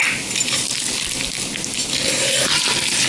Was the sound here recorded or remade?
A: recorded